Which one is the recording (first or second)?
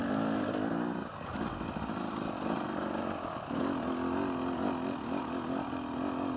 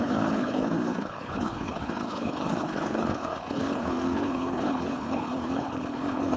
first